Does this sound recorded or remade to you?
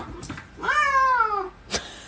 recorded